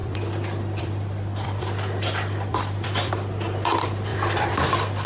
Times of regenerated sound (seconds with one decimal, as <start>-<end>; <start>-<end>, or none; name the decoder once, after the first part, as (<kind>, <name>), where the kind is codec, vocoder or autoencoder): 0.0-3.1 (vocoder, BigVGAN v2); 4.1-5.1